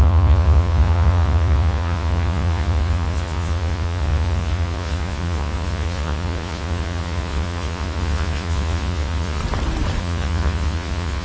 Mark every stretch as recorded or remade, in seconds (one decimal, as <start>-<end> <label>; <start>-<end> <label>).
0.0-9.4 remade; 9.4-10.0 recorded; 10.0-11.2 remade